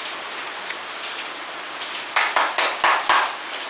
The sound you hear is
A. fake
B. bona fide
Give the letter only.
B